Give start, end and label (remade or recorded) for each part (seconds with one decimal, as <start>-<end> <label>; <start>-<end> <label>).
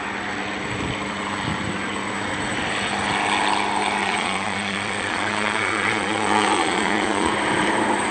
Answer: 0.0-4.0 recorded; 4.0-7.3 remade; 7.3-8.1 recorded